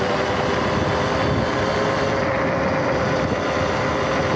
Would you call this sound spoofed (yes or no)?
no